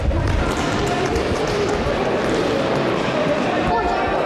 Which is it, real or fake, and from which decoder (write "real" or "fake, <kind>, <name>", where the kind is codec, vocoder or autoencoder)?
real